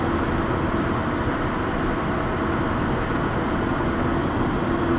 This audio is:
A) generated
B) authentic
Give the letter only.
B